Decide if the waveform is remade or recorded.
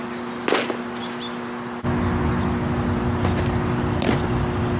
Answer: recorded